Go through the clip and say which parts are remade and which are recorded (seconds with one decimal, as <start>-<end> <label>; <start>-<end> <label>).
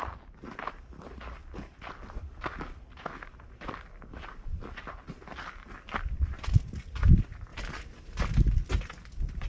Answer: 0.0-9.5 recorded